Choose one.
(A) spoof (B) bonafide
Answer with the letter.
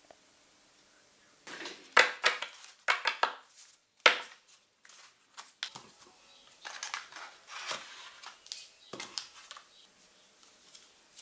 B